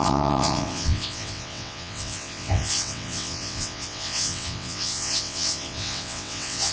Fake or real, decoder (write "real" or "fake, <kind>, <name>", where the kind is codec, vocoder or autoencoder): fake, vocoder, WaveNeXt